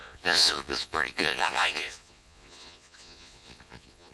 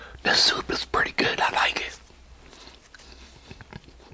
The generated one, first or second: first